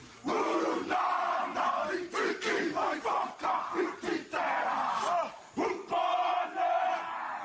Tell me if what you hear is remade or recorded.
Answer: recorded